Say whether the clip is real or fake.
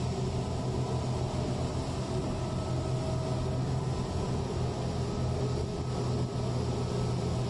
real